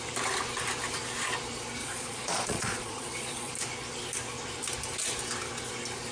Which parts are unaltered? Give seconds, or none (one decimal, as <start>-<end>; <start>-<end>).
0.0-1.8; 3.5-6.1